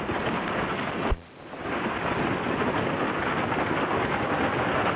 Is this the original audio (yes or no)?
yes